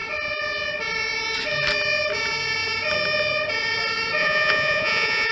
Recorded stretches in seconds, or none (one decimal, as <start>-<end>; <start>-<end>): 0.0-4.2